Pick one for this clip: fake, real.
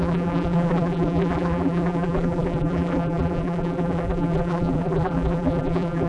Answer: fake